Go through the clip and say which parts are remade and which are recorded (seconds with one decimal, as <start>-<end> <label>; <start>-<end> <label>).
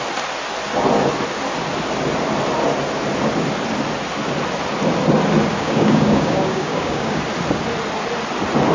0.0-5.5 recorded; 5.5-7.2 remade; 7.2-8.7 recorded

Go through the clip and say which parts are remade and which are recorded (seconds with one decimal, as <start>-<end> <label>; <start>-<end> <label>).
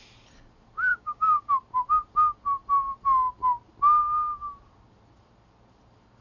0.0-0.9 recorded; 0.9-1.5 remade; 1.5-6.2 recorded